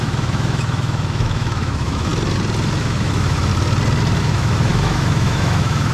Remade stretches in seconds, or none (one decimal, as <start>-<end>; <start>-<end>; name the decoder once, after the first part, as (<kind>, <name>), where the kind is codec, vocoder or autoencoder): 0.0-2.1 (autoencoder, DAC-VAE); 2.8-3.5; 4.2-5.9